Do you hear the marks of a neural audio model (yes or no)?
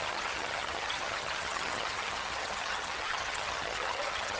yes